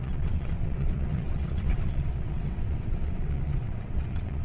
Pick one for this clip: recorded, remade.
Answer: remade